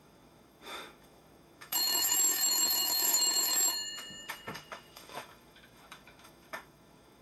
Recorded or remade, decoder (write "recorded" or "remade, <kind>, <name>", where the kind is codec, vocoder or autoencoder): remade, autoencoder, DAC-VAE